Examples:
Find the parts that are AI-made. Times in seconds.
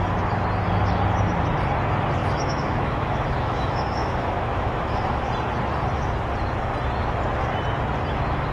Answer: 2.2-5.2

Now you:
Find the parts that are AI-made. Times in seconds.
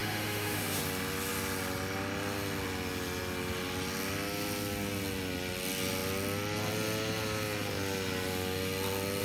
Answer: 0.0-0.8